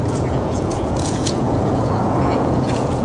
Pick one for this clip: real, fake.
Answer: fake